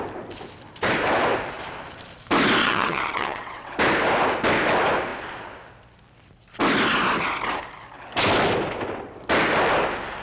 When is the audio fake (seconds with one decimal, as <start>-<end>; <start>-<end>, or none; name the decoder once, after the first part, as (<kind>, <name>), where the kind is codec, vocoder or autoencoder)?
2.6-3.7 (vocoder, WaveNeXt)